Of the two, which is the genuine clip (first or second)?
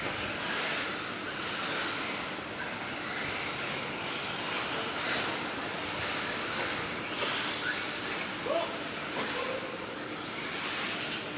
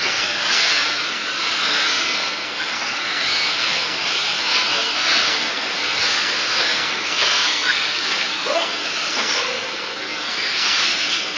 first